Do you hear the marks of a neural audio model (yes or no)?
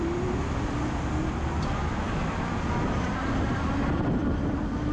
no